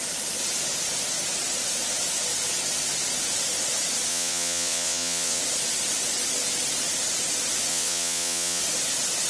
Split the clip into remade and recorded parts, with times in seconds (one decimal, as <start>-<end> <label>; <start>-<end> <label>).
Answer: 0.0-4.1 recorded; 4.1-5.4 remade; 5.4-7.7 recorded; 7.7-8.6 remade; 8.6-9.3 recorded

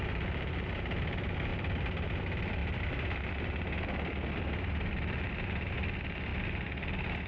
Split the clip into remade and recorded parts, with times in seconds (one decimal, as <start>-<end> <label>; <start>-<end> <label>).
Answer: 0.0-1.5 recorded; 1.5-2.1 remade; 2.1-6.3 recorded; 6.3-7.3 remade